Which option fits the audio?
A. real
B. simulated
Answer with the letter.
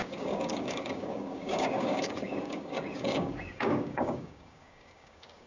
B